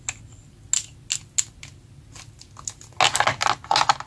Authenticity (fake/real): real